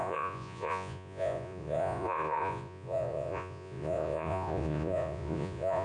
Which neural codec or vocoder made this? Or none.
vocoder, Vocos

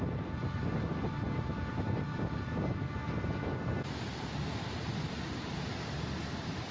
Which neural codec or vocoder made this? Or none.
none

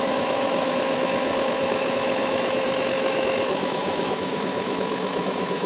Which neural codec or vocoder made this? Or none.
autoencoder, DAC-VAE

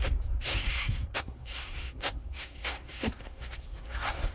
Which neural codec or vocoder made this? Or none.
codec, SNAC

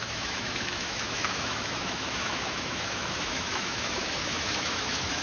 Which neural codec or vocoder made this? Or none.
autoencoder, DAC-VAE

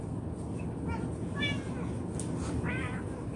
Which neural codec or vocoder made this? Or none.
none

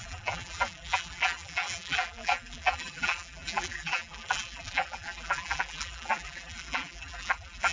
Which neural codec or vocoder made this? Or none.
vocoder, BigVGAN v2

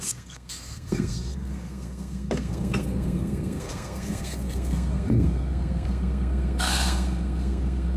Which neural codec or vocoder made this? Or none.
codec, SNAC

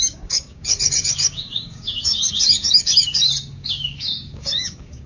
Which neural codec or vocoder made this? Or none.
codec, DAC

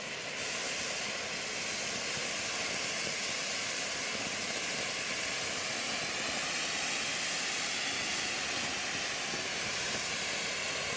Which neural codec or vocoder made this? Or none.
none